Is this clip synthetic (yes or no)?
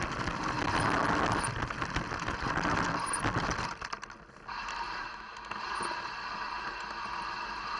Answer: no